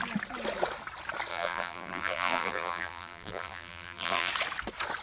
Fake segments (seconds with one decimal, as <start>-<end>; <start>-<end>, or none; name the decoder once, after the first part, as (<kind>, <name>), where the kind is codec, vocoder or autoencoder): 1.3-4.3 (vocoder, BigVGAN v2)